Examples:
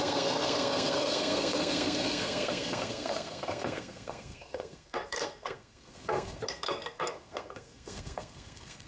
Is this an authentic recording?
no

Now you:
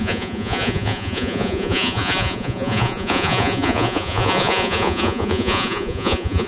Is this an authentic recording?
no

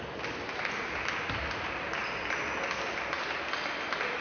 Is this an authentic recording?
yes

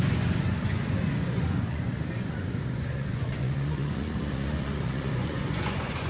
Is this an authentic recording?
no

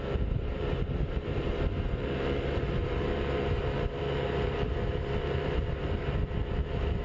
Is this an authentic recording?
no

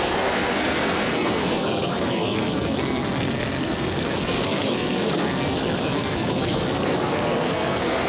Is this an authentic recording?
no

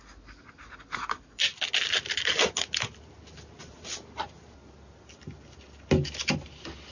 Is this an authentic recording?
yes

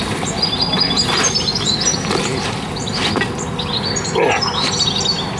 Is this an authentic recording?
yes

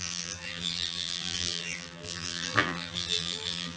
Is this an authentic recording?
no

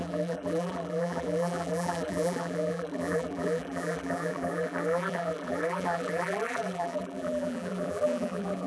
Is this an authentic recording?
no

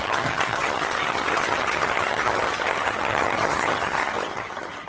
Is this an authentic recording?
no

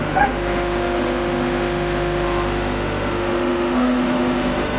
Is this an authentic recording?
no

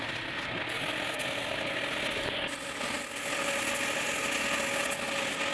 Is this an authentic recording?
yes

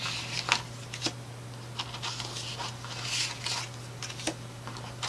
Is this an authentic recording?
yes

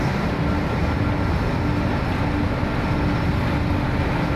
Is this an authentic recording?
yes